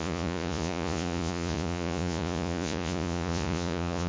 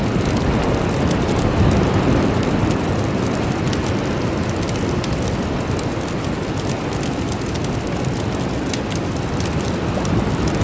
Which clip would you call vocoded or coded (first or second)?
first